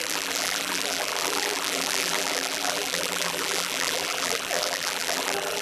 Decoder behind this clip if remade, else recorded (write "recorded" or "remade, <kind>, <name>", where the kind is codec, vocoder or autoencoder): remade, vocoder, BigVGAN v2